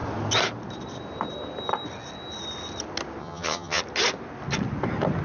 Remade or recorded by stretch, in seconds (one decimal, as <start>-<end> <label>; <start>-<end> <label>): 0.0-3.2 recorded; 3.2-3.8 remade; 3.8-5.2 recorded